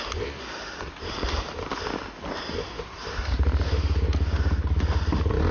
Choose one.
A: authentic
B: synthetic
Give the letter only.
A